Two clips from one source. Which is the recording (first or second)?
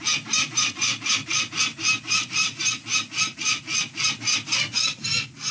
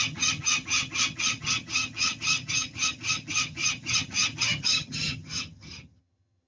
first